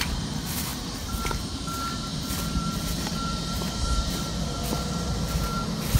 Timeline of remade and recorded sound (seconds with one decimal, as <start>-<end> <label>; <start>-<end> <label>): 0.0-2.1 recorded; 2.1-4.3 remade; 4.3-4.8 recorded; 4.8-5.6 remade; 5.6-6.0 recorded